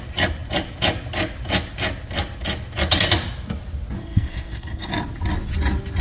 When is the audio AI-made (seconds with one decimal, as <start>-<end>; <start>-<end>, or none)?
4.0-4.9

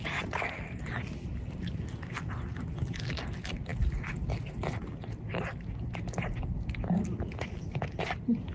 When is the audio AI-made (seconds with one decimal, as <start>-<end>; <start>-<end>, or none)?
none

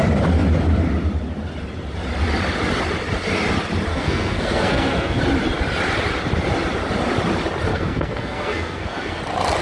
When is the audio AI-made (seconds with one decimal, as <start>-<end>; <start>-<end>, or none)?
3.9-5.2; 7.7-9.2